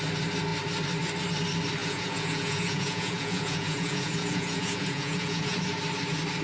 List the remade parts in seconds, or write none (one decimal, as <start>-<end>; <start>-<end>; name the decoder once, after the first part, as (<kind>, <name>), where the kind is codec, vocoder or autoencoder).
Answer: 1.8-5.6 (vocoder, Vocos)